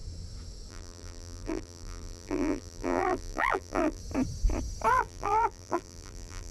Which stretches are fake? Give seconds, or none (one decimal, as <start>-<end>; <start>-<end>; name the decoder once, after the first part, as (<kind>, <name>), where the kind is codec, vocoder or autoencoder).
0.7-4.0 (vocoder, BigVGAN v2); 4.9-6.5